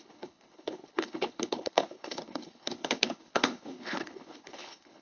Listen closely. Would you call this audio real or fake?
fake